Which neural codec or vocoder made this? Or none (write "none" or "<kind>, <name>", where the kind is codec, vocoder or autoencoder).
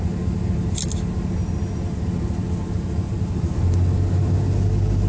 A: none